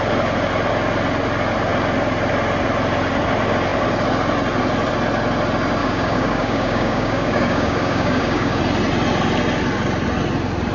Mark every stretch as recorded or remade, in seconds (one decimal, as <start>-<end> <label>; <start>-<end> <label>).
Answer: 0.0-5.8 recorded; 5.8-8.6 remade; 8.6-10.7 recorded